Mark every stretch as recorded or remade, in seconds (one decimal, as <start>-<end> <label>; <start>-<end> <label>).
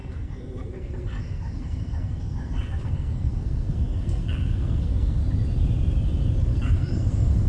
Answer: 0.0-5.2 remade; 5.2-6.4 recorded; 6.4-7.5 remade